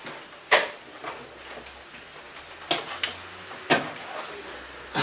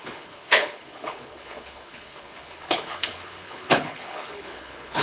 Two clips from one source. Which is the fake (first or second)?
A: second